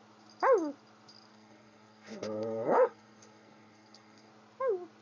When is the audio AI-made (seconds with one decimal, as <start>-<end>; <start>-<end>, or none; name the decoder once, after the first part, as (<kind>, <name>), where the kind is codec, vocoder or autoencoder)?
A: 1.3-4.3 (codec, SNAC)